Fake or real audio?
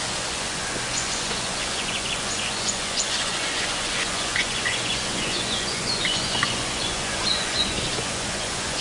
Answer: fake